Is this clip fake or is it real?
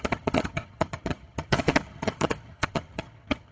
fake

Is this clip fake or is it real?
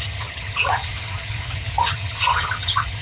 fake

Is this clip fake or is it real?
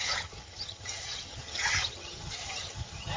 fake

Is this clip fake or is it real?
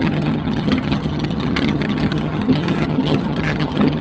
fake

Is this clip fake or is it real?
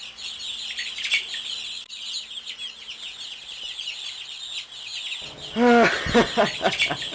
real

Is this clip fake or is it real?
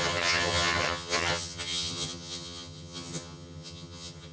fake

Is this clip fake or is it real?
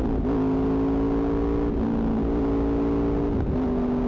real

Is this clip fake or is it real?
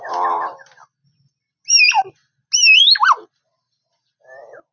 real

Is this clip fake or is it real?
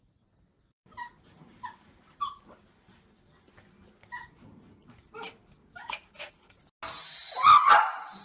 real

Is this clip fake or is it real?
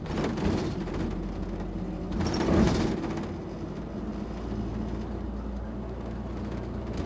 real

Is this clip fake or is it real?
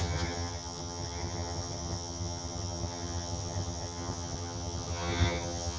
fake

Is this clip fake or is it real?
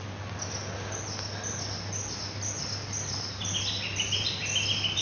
real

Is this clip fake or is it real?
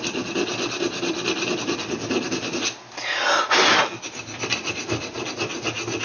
real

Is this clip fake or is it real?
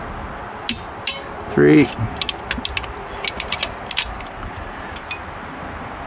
real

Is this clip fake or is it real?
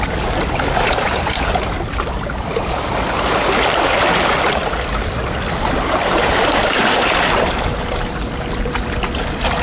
real